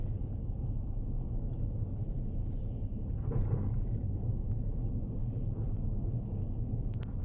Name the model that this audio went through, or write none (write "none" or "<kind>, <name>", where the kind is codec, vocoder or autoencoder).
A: none